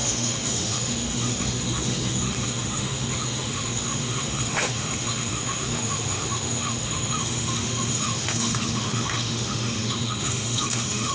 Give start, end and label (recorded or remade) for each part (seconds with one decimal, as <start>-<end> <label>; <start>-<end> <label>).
0.0-11.1 remade